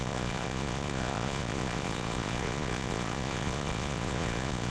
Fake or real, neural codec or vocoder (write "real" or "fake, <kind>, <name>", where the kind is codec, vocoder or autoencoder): fake, vocoder, Vocos